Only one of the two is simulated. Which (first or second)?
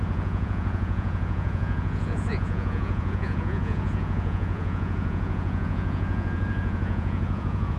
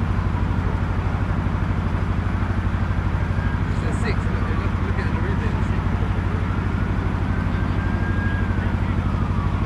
first